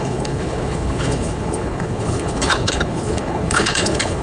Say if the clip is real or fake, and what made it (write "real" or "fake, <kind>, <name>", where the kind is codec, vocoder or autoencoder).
fake, codec, HILCodec